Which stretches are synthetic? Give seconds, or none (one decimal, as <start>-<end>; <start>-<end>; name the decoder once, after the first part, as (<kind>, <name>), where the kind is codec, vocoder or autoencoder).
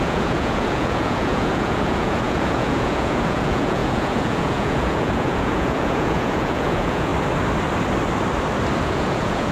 0.0-7.1 (vocoder, Vocos); 8.8-9.5